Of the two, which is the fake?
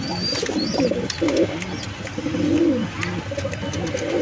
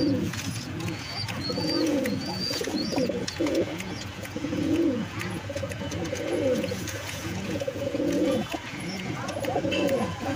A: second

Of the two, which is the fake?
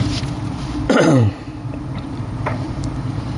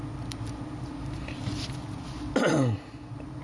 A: first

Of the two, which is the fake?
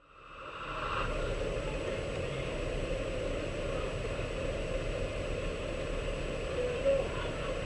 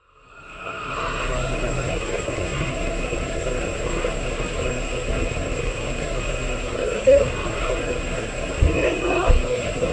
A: second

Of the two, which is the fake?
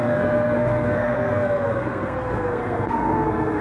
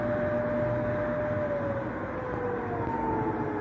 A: first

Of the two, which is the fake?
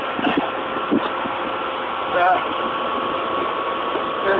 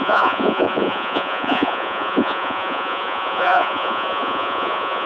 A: second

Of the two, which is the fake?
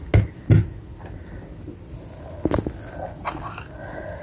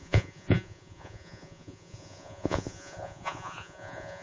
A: second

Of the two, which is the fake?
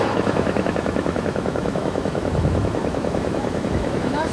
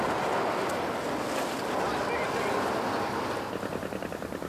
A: first